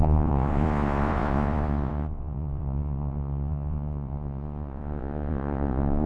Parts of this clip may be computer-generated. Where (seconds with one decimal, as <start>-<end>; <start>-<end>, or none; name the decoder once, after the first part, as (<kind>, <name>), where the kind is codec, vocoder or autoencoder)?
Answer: 0.0-6.1 (vocoder, Vocos)